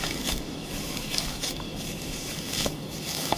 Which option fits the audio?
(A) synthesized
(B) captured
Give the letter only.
A